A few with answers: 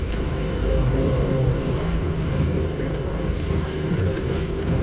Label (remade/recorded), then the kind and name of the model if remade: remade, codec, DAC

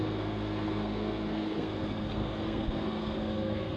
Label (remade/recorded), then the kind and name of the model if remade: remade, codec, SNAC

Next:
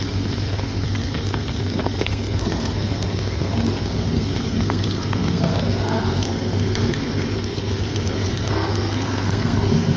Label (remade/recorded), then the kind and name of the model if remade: remade, codec, SNAC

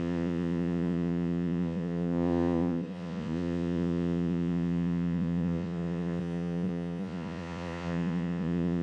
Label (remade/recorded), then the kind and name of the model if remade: remade, vocoder, Vocos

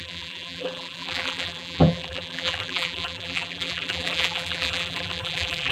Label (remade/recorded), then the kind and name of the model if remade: remade, vocoder, BigVGAN v2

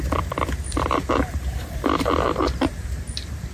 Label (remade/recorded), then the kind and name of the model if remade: recorded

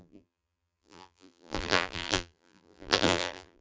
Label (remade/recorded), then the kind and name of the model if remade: remade, vocoder, BigVGAN v2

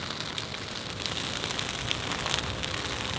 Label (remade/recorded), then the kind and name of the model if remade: recorded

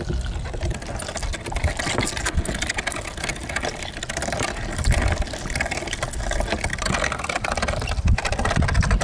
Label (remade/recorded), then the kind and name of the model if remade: recorded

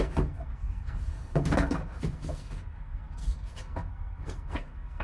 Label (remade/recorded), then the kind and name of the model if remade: remade, codec, SNAC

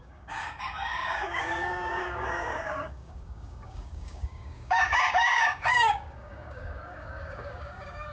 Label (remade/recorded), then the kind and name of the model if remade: remade, codec, DAC